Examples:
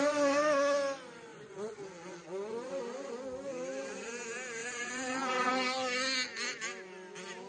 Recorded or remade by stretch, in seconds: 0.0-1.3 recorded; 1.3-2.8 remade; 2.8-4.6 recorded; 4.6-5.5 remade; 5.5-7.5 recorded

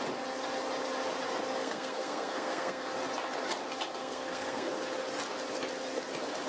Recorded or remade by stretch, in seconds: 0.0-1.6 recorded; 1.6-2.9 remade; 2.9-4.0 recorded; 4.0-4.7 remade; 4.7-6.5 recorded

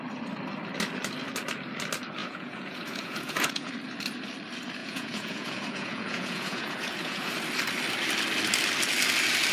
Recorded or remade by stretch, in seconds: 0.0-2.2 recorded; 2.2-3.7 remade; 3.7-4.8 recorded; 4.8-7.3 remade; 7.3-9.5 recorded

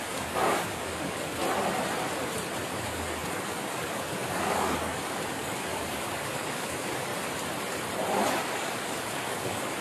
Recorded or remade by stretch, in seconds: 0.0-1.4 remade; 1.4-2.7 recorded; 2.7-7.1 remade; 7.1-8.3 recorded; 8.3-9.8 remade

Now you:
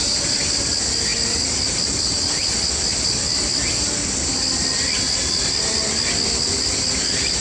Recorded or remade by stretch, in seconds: 0.0-7.4 recorded

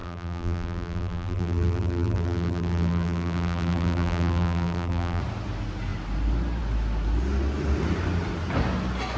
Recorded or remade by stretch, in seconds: 0.0-5.2 remade; 5.2-9.2 recorded